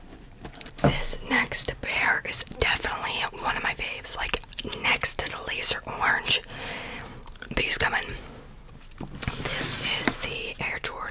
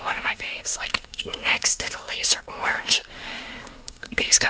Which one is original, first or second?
first